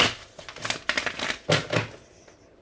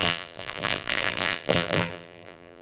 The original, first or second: first